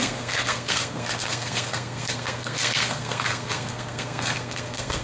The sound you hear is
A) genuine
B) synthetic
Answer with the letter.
B